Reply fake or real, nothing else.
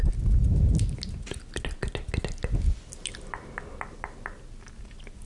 real